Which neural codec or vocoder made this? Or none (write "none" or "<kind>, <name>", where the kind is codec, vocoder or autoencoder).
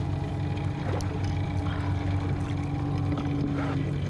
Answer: none